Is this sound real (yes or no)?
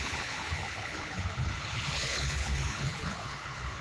no